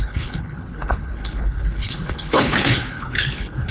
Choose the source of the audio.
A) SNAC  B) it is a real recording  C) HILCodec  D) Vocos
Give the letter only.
C